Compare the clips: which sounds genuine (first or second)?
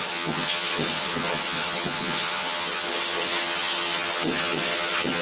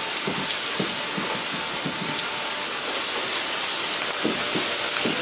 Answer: second